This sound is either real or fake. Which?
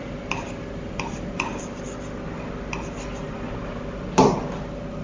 real